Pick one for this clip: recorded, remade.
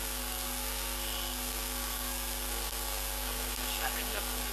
remade